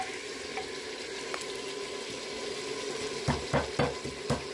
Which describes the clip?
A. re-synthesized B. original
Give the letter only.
B